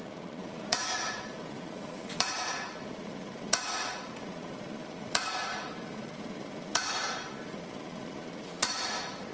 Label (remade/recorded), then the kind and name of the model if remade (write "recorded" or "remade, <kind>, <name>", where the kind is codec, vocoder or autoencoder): remade, vocoder, Vocos